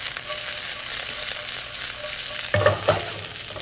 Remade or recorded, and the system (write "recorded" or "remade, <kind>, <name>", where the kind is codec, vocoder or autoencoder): recorded